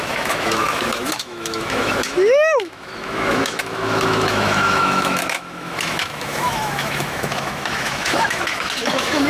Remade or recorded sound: remade